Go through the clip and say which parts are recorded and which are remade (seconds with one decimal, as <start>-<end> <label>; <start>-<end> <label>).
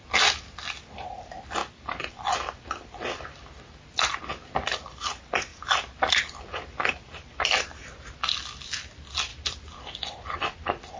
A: 0.0-1.6 recorded; 1.6-2.1 remade; 2.1-5.5 recorded; 5.5-6.9 remade; 6.9-11.0 recorded